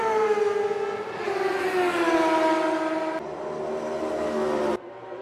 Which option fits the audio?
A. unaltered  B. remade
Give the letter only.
A